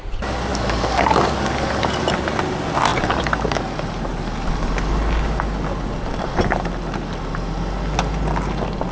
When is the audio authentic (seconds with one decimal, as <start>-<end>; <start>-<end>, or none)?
0.0-0.5; 1.5-8.9